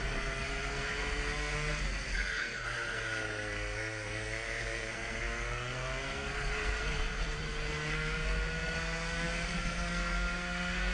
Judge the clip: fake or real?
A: fake